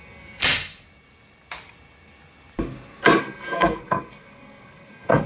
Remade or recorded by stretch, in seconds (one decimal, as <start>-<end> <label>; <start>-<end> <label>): 0.0-0.4 remade; 0.4-3.2 recorded; 3.2-5.3 remade